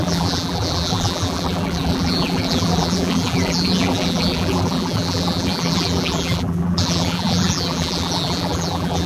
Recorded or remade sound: remade